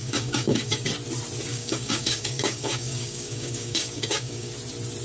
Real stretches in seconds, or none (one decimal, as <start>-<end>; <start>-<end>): 0.9-1.5; 4.5-5.0